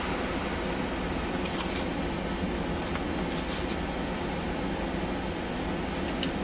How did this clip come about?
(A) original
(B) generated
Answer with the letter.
A